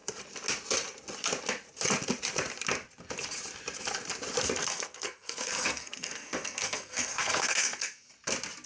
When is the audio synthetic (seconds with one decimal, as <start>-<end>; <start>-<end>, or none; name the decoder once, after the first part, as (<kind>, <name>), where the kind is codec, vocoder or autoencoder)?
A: 4.6-8.1 (codec, SNAC)